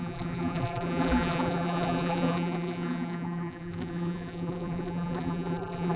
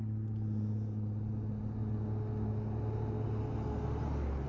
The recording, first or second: second